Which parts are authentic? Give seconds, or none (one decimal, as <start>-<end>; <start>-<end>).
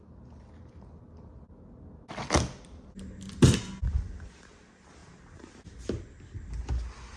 0.0-7.2